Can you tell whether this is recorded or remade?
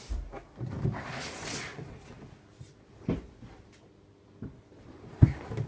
recorded